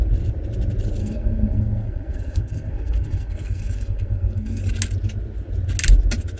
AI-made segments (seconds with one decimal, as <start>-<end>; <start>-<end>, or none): 1.0-4.6